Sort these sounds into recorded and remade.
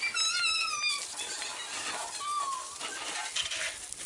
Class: recorded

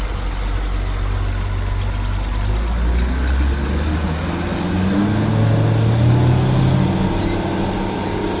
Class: recorded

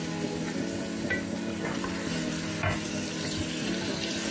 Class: recorded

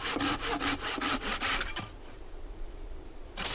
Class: recorded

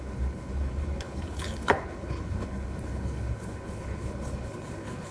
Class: remade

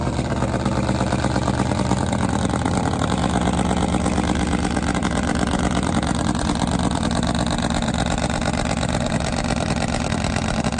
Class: recorded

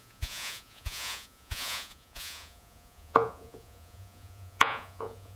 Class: remade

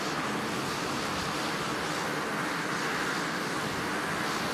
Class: recorded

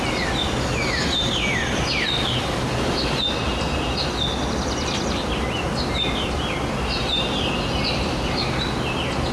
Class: recorded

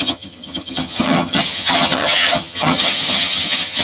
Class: remade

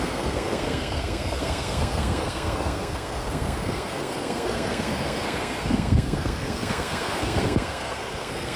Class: remade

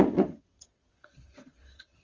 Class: remade